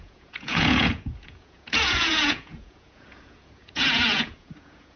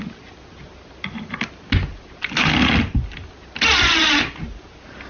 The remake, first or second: first